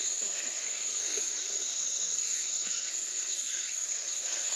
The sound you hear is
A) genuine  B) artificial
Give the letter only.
B